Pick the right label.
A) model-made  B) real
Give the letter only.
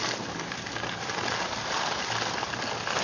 B